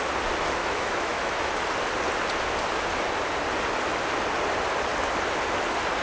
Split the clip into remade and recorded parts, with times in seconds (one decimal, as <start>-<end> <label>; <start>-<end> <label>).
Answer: 0.0-0.6 recorded; 0.6-1.5 remade; 1.5-6.0 recorded